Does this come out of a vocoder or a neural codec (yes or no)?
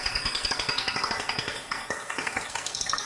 yes